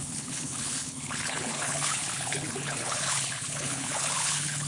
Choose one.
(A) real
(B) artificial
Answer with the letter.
B